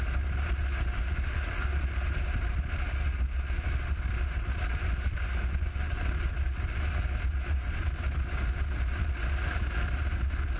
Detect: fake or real real